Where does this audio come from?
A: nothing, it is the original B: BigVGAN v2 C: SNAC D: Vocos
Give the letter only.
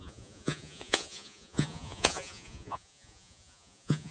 D